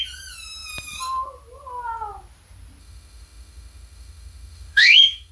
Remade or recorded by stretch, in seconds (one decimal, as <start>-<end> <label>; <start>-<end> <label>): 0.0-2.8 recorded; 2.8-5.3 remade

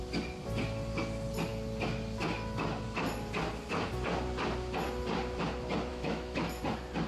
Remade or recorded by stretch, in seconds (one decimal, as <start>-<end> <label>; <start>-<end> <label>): 0.0-5.9 recorded; 5.9-6.6 remade; 6.6-7.1 recorded

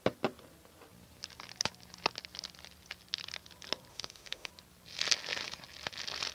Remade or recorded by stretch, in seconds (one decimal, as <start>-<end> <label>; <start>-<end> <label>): 0.0-3.9 recorded; 3.9-4.5 remade; 4.5-6.3 recorded